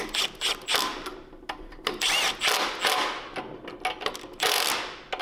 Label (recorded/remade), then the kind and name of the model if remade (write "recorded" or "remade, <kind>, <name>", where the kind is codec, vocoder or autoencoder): recorded